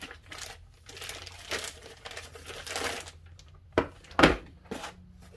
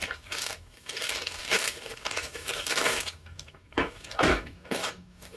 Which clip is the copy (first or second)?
second